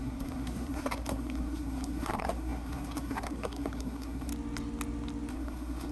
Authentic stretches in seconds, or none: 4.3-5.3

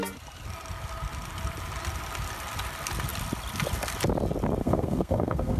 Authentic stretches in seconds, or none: 0.0-4.6

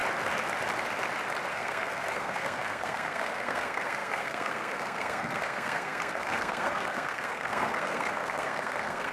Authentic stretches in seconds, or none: 0.0-1.5

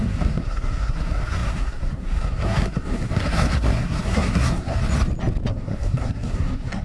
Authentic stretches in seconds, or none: 4.8-5.5

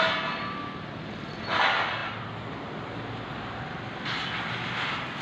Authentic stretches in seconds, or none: 0.0-5.2

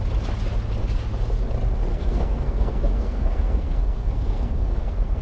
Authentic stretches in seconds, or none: 0.0-1.9

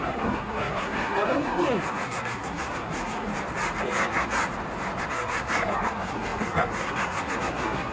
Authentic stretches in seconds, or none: 3.3-3.8; 4.4-5.1